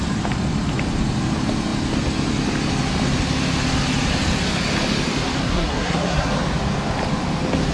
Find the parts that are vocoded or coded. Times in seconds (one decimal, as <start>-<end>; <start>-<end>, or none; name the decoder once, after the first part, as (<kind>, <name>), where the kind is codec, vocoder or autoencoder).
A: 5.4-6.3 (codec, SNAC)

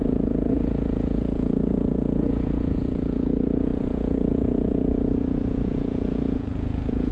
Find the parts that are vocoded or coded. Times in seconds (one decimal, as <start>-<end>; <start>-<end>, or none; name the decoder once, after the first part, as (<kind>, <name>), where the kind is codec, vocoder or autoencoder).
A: 0.0-7.1 (vocoder, Vocos)

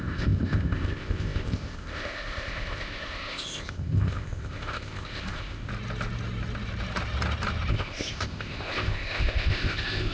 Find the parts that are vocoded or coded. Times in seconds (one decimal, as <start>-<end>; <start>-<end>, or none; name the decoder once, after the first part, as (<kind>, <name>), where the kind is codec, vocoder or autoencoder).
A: 0.0-5.7 (codec, ZipCodec); 7.7-10.1